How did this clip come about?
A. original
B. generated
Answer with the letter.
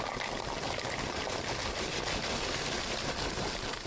A